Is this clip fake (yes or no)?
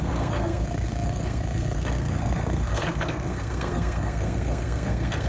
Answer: yes